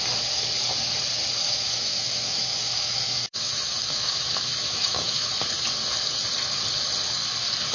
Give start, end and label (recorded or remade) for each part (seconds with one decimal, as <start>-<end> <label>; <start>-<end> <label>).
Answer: 0.0-1.4 recorded; 1.4-5.3 remade; 5.3-7.7 recorded